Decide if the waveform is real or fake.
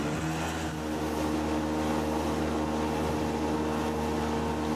real